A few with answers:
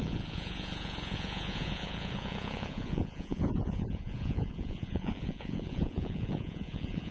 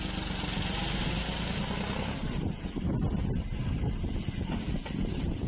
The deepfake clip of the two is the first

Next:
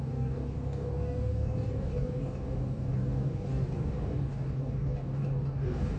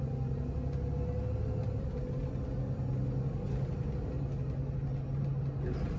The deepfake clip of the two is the first